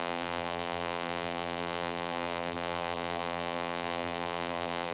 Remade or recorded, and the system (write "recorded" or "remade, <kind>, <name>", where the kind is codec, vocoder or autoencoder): remade, vocoder, BigVGAN v2